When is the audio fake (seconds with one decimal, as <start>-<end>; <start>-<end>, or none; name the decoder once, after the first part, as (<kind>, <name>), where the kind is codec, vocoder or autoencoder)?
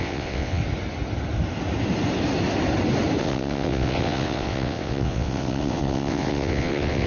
0.0-0.6 (vocoder, WaveNeXt); 3.2-7.1